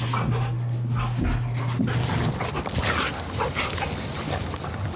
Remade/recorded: recorded